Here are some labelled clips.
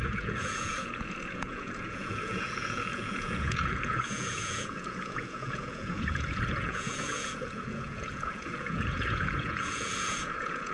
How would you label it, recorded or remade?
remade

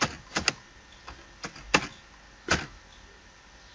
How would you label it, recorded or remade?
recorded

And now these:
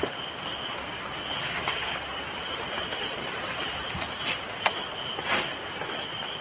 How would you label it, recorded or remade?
recorded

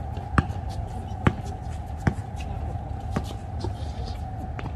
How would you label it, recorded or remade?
recorded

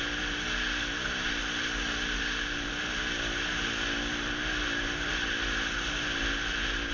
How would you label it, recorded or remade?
recorded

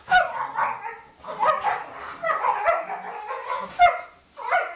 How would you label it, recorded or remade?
recorded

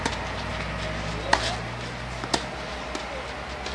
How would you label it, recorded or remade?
recorded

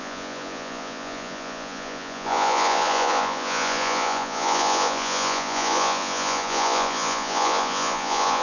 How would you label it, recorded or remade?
remade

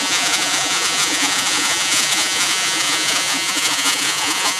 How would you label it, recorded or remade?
remade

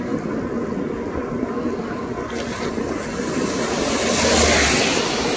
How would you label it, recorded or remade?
recorded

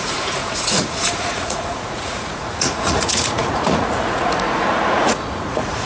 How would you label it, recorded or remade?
remade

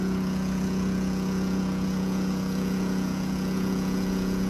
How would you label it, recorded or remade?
remade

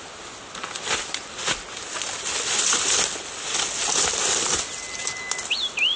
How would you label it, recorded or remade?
recorded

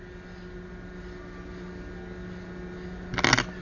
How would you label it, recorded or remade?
recorded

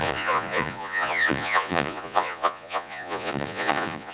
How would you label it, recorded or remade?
remade